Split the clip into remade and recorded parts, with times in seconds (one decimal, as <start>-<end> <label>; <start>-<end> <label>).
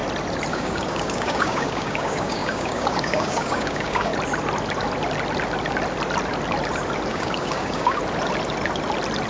0.0-0.5 recorded; 0.5-4.1 remade; 4.1-7.1 recorded; 7.1-8.0 remade; 8.0-9.3 recorded